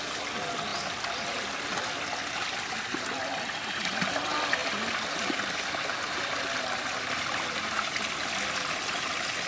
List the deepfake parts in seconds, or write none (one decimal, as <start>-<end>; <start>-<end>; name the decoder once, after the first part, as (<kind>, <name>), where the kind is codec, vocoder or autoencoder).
none